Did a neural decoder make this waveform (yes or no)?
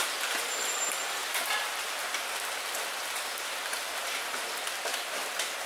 no